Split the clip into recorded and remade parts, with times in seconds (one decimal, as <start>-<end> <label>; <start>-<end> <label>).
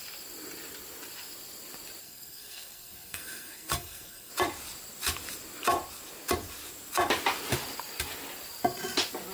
0.0-2.0 recorded; 2.0-4.3 remade; 4.3-9.3 recorded